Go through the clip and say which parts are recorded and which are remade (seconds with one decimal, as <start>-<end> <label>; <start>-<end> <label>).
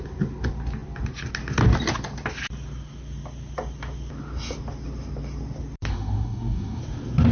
0.0-5.9 recorded; 5.9-6.8 remade; 6.8-7.3 recorded